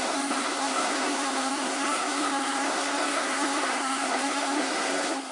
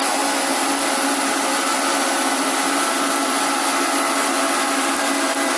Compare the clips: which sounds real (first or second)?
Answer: second